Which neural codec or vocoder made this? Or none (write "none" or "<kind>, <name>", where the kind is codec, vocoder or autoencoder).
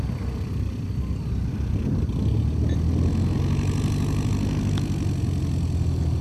none